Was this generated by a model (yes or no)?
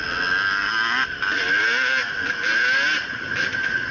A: no